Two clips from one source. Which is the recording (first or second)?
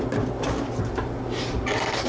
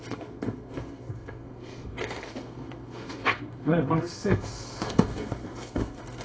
first